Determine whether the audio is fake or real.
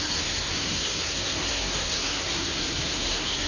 fake